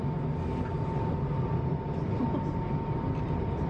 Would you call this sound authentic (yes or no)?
yes